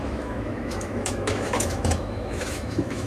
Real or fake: fake